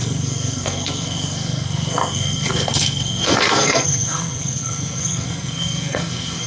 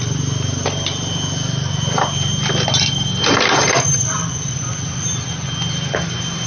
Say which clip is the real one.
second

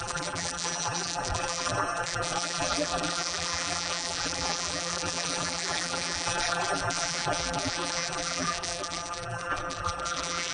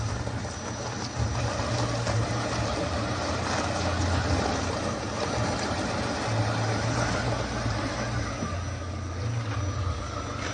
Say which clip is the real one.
second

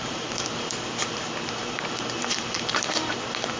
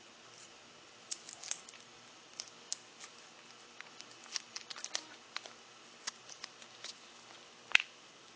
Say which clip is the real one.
second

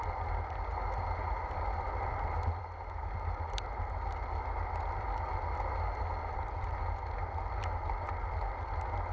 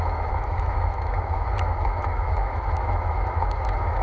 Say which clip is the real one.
first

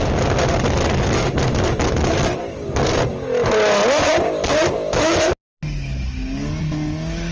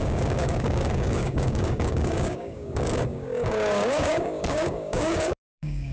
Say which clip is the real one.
first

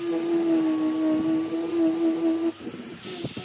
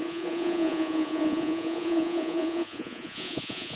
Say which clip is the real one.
first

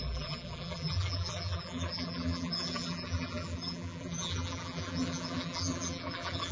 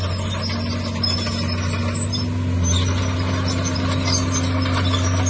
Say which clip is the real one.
second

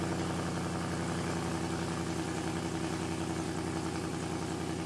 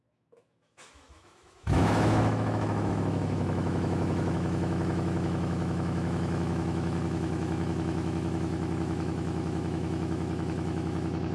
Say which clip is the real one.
first